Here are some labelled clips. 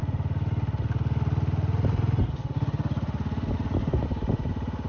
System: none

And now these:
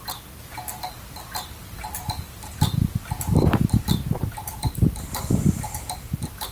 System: none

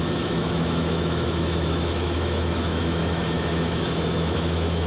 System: autoencoder, DAC-VAE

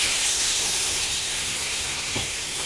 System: codec, SNAC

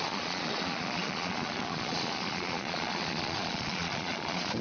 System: vocoder, Vocos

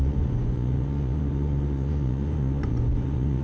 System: vocoder, Vocos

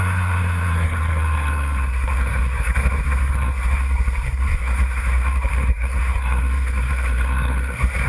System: codec, SNAC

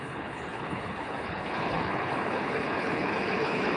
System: codec, HILCodec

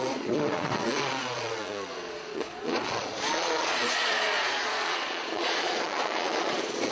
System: vocoder, Vocos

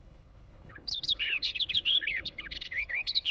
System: codec, HILCodec